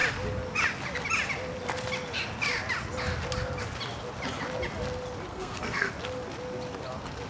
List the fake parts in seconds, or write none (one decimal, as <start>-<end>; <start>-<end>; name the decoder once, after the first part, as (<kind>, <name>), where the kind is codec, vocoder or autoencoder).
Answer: 5.3-5.9 (codec, SNAC)